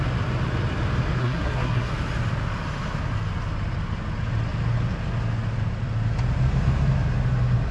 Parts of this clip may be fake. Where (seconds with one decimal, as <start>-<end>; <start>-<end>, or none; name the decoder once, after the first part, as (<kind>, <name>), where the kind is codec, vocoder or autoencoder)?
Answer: 1.2-1.9 (codec, SNAC)